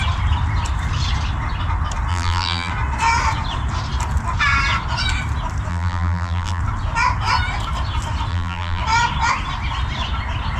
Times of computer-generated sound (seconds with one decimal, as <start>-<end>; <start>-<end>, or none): 2.1-2.7; 5.7-6.6; 8.3-8.8